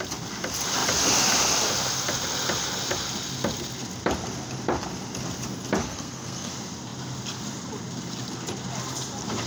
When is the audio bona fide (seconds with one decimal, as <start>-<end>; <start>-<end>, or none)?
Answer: 0.0-5.8; 6.5-9.5